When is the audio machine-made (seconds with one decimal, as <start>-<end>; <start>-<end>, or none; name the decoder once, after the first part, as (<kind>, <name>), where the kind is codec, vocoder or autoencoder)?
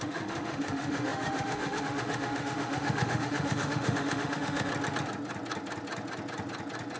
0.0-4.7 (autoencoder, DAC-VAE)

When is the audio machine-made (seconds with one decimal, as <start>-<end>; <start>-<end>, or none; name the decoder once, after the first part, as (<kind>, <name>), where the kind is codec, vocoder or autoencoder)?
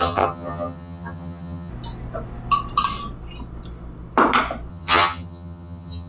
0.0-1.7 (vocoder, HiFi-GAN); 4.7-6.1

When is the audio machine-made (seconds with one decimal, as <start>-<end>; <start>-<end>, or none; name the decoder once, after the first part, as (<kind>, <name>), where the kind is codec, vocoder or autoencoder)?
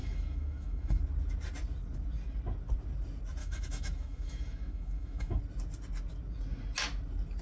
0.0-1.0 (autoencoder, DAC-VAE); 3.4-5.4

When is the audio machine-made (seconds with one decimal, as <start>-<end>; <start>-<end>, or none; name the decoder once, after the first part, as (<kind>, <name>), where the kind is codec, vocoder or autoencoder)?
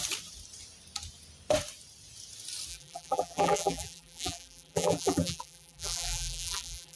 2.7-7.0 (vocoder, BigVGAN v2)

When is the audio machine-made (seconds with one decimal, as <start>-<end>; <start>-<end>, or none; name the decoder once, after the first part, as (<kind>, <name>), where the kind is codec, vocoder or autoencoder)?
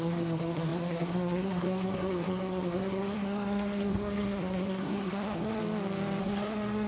0.0-5.6 (codec, SNAC); 6.2-6.9